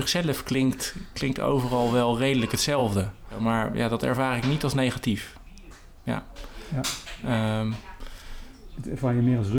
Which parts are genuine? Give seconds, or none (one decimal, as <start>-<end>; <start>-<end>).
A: 0.0-0.4; 1.1-9.6